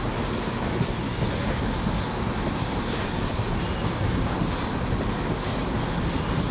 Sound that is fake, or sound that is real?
real